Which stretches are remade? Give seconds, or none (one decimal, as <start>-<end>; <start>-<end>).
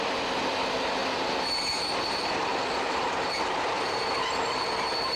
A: 0.0-1.0; 1.8-5.2